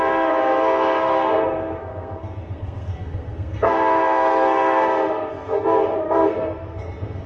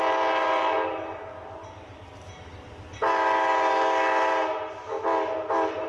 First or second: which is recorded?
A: second